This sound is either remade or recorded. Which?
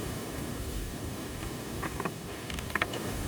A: remade